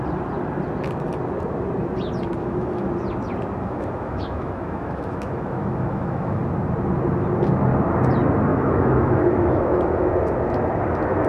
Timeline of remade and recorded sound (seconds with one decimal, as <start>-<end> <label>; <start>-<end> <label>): 0.0-2.4 recorded; 2.4-2.9 remade; 2.9-3.6 recorded; 3.6-6.4 remade; 6.4-8.5 recorded; 8.5-10.1 remade; 10.1-11.3 recorded